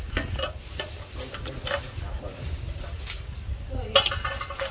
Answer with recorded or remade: recorded